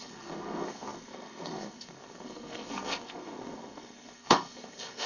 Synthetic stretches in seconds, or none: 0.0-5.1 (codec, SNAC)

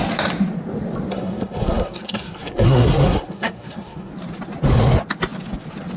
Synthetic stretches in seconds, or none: 1.1-4.1 (codec, SNAC)

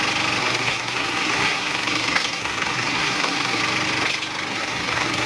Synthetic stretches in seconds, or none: 0.4-3.6 (codec, SNAC); 4.5-5.3

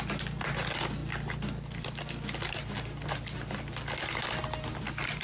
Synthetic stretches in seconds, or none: none

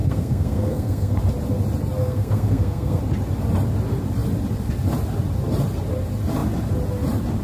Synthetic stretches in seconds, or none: 0.0-1.2 (codec, SNAC); 2.0-3.0

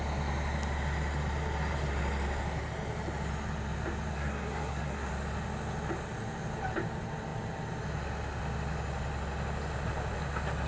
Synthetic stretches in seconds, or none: 4.1-5.1 (codec, SNAC)

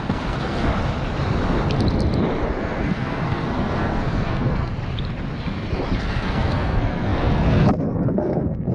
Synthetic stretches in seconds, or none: 0.0-0.7 (codec, SNAC); 2.6-4.7; 6.0-8.7